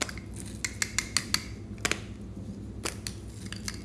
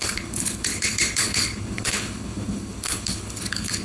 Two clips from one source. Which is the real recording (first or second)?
first